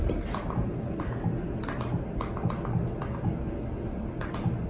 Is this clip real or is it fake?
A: real